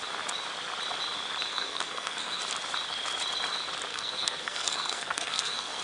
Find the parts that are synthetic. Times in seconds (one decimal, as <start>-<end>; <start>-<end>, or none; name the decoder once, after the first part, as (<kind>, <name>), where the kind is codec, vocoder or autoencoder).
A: 1.5-2.4 (codec, SNAC); 3.9-5.8